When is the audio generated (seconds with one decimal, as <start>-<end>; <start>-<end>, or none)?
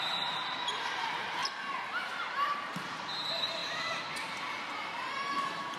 0.0-1.4; 2.0-3.6; 5.1-5.8